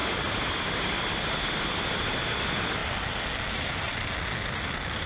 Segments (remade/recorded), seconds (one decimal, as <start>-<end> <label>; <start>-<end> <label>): 0.0-5.1 recorded